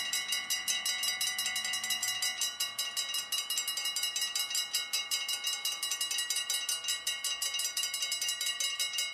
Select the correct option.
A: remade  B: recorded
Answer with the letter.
B